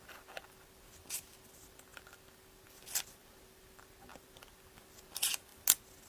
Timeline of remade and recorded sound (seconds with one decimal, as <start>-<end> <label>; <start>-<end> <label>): 0.0-6.1 recorded